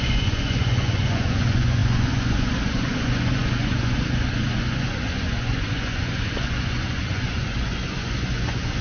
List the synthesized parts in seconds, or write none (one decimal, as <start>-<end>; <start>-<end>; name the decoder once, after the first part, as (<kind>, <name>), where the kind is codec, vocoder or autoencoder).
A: 0.0-8.8 (vocoder, Vocos)